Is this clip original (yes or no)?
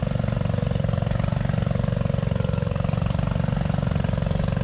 yes